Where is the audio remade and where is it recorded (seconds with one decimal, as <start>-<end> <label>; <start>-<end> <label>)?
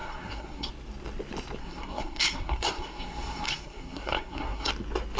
0.0-0.7 remade; 0.7-1.6 recorded; 1.6-4.7 remade; 4.7-5.2 recorded